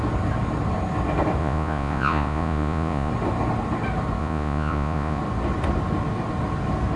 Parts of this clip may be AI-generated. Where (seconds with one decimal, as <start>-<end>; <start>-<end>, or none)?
1.4-3.1; 4.2-5.2